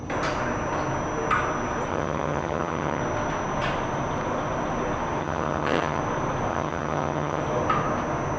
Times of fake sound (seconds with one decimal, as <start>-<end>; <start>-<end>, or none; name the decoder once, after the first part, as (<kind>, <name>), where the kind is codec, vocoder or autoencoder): 1.9-3.0 (vocoder, HiFi-GAN); 5.2-6.0; 6.5-7.4